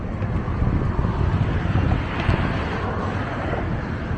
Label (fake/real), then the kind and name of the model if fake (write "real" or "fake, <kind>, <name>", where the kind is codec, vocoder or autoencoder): real